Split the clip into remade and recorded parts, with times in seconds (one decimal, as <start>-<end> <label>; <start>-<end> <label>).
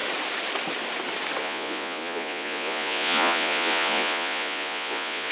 0.0-1.4 recorded; 1.4-5.3 remade